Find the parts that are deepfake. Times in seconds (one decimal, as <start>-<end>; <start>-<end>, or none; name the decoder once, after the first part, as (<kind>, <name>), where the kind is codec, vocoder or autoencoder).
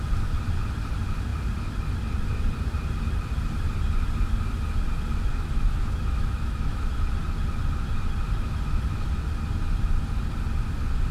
5.3-6.9 (autoencoder, DAC-VAE)